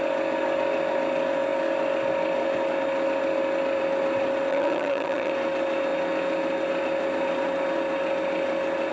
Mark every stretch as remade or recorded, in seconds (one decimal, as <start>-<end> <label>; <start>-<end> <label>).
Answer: 0.0-4.5 recorded; 4.5-5.3 remade; 5.3-8.9 recorded